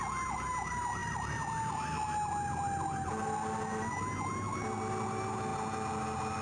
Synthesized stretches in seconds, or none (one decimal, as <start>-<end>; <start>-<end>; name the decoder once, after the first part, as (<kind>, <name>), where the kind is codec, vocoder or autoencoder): none